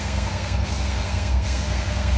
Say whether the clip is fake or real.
fake